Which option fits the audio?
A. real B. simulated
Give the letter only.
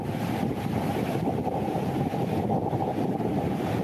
A